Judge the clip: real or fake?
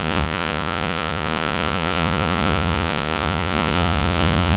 fake